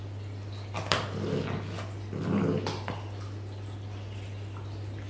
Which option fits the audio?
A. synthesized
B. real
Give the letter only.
B